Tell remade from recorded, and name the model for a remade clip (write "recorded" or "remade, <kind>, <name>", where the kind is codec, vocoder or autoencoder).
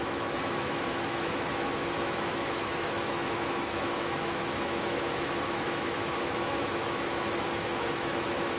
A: remade, autoencoder, DAC-VAE